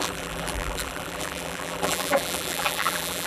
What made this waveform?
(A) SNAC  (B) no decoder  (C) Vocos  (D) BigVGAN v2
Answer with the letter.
D